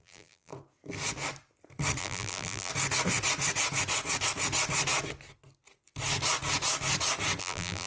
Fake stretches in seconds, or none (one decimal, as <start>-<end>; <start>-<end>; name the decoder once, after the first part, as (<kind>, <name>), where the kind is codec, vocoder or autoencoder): 0.0-0.5 (vocoder, BigVGAN v2); 2.0-2.7; 7.4-7.9